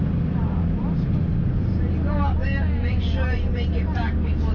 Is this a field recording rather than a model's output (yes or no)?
no